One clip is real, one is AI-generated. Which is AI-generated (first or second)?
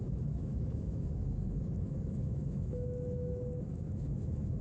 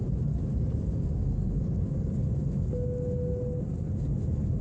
first